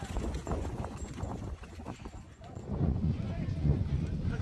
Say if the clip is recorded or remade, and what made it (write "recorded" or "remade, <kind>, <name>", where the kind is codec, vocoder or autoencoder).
remade, vocoder, Vocos